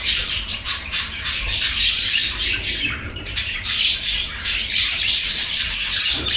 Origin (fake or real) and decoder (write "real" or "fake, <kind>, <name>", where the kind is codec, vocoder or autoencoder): fake, vocoder, BigVGAN v2